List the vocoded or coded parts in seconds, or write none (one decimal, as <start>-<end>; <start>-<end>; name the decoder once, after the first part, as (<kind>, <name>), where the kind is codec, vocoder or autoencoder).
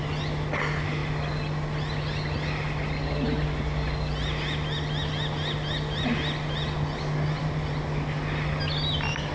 none